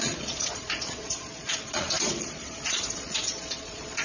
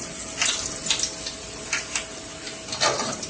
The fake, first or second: first